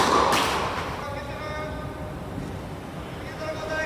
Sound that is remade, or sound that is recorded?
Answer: recorded